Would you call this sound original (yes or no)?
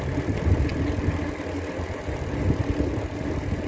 yes